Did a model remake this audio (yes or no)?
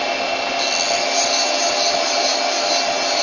no